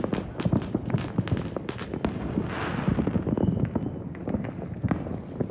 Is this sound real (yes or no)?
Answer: yes